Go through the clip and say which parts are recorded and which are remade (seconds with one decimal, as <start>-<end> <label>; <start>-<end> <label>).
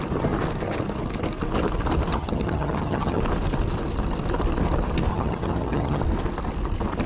0.0-2.1 recorded; 2.1-3.2 remade; 3.2-5.1 recorded; 5.1-6.0 remade; 6.0-7.1 recorded